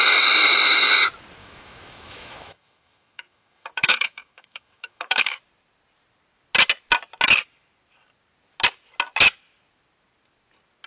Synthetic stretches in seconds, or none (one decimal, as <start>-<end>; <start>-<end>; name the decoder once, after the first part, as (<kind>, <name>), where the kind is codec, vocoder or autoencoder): 1.4-5.4 (autoencoder, DAC-VAE)